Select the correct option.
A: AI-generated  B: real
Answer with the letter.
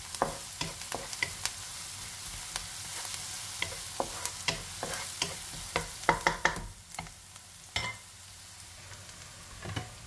B